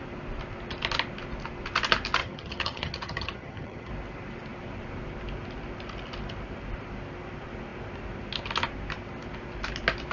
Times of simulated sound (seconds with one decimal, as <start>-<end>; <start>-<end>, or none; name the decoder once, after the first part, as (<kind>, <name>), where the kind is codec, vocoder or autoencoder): 2.2-3.9 (vocoder, HiFi-GAN)